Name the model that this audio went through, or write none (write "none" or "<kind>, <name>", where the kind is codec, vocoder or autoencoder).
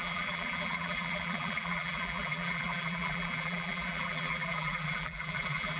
vocoder, BigVGAN v2